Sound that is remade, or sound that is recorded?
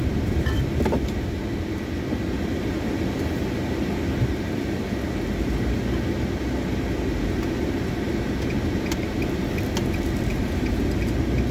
recorded